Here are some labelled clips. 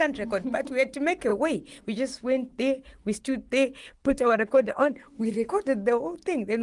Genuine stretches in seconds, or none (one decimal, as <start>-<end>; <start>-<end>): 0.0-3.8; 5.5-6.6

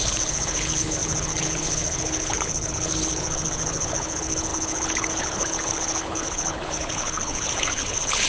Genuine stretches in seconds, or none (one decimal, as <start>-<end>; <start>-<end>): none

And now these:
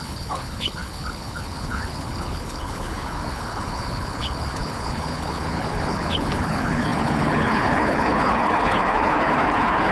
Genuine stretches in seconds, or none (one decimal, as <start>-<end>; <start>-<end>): none